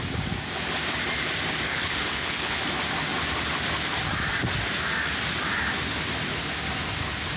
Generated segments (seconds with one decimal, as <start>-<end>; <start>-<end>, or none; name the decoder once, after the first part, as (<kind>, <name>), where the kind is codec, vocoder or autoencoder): 1.7-2.6 (codec, HILCodec)